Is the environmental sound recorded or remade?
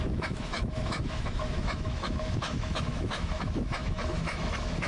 remade